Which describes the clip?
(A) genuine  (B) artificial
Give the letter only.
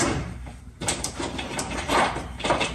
B